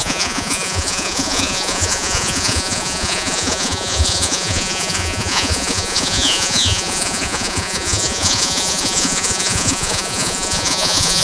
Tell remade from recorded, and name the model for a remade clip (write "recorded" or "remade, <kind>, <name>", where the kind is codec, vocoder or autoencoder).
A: remade, vocoder, Vocos